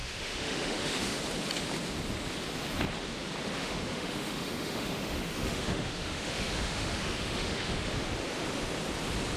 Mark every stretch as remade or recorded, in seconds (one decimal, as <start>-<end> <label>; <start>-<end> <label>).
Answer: 0.0-1.2 remade; 1.2-3.6 recorded; 3.6-7.9 remade; 7.9-9.4 recorded